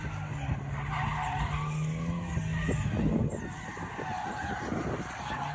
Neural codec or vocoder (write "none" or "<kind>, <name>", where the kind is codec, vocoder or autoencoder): none